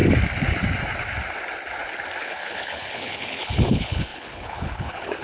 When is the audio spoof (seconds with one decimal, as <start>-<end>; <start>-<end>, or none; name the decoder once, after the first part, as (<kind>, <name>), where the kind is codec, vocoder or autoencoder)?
2.2-5.2 (codec, HILCodec)